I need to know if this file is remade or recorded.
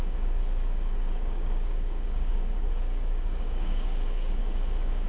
remade